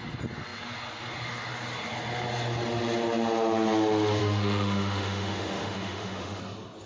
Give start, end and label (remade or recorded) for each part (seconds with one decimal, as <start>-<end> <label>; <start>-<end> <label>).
0.0-4.2 recorded; 4.2-6.4 remade; 6.4-6.9 recorded